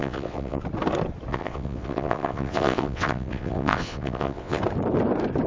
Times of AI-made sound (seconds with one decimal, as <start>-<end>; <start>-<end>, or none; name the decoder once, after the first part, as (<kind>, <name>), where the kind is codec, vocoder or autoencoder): 0.0-0.6 (vocoder, WaveNeXt); 1.3-4.6